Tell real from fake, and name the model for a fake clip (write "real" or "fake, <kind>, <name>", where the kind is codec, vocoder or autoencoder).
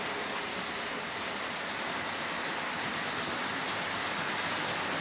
real